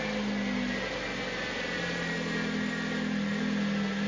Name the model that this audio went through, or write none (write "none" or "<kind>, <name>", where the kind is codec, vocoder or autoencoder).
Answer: none